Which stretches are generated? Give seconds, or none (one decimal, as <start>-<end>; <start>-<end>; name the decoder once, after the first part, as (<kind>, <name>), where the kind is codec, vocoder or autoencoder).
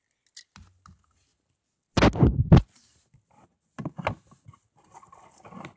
none